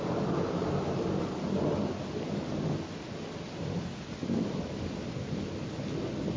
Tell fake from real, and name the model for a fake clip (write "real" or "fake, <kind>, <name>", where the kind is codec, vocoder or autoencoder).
real